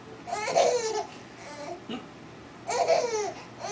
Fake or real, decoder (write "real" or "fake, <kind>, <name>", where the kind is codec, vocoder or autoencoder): real